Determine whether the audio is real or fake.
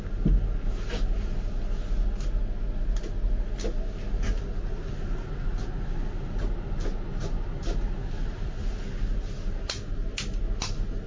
real